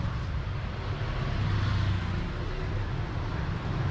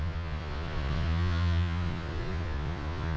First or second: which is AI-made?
second